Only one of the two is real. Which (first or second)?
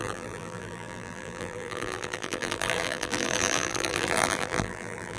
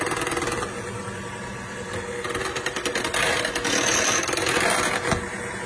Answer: second